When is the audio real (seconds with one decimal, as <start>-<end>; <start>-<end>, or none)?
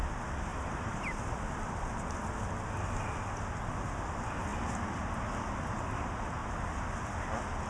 0.0-0.5; 1.7-6.4; 7.3-7.7